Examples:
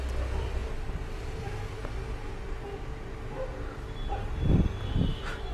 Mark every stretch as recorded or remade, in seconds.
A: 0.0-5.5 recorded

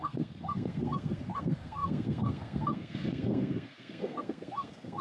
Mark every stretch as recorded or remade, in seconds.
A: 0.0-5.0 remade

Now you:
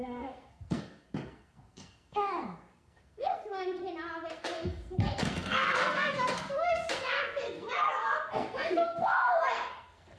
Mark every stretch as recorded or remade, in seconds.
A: 0.0-3.8 remade; 3.8-4.3 recorded; 4.3-10.2 remade

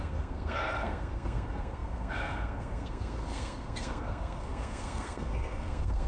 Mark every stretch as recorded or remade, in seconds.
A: 0.0-6.1 remade